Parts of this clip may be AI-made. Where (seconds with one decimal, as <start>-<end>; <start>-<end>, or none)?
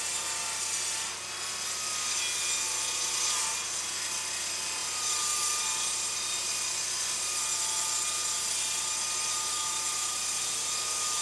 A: none